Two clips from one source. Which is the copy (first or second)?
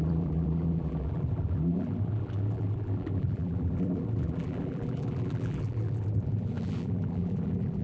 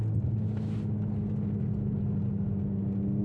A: first